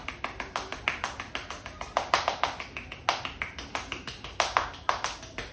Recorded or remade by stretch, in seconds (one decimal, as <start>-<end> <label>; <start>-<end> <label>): 0.0-5.5 recorded